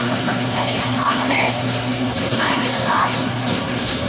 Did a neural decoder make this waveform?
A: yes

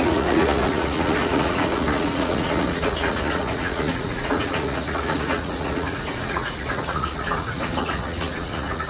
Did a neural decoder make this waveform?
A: yes